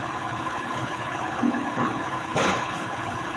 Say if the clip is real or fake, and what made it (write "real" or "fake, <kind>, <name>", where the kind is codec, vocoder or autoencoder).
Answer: fake, codec, HILCodec